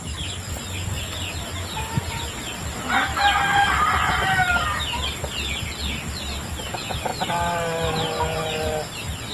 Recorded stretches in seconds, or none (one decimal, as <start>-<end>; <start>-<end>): 0.0-9.3

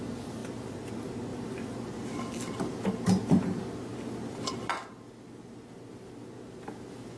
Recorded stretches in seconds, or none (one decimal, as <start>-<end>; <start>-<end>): 0.0-1.3; 2.6-7.2

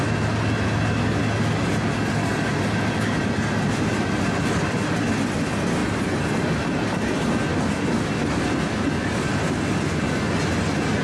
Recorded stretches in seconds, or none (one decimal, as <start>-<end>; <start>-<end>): 0.0-5.8; 6.8-11.0